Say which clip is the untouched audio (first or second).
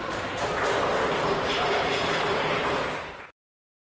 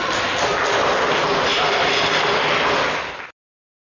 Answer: second